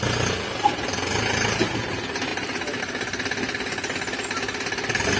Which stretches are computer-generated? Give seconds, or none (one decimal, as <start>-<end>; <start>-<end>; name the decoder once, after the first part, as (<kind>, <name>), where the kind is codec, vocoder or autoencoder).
none